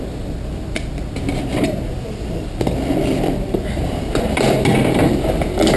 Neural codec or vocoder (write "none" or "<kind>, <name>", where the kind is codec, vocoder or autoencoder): vocoder, BigVGAN v2